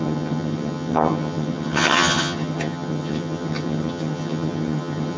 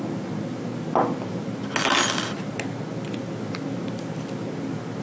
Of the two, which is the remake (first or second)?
first